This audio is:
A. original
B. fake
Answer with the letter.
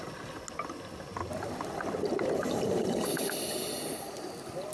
A